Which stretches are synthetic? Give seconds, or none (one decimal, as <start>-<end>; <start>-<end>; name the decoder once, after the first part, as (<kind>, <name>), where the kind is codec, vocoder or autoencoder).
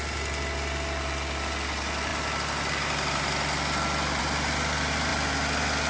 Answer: none